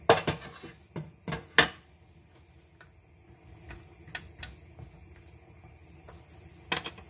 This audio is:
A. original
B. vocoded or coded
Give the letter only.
A